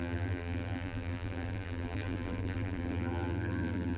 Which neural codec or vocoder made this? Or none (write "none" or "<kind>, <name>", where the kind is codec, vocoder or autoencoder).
vocoder, BigVGAN v2